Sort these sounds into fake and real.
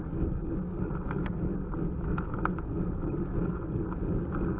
real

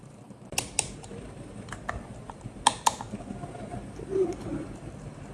fake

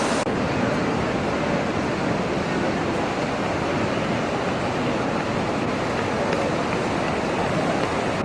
real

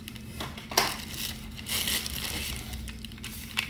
real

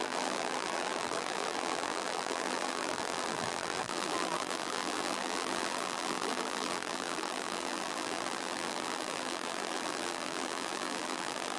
fake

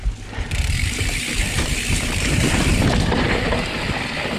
fake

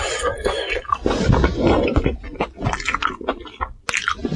real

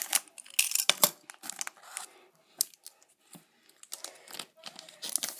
real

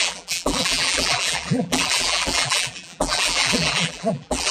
fake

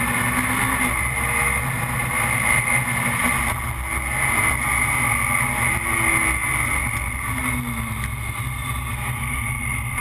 real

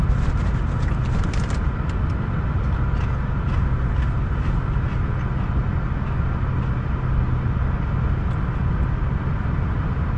real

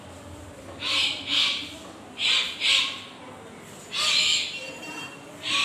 real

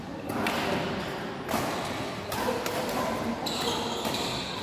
real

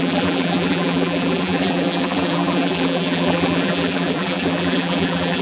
fake